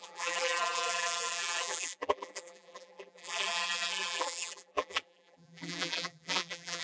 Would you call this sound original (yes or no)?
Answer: no